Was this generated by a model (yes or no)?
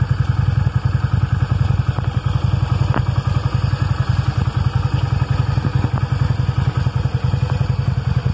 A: no